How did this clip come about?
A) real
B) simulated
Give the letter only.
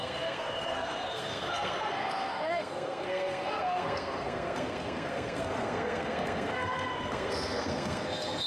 B